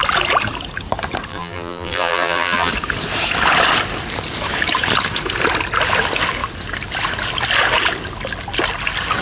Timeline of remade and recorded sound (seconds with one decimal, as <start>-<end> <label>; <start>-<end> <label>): 0.0-1.3 recorded; 1.3-2.7 remade; 2.7-9.2 recorded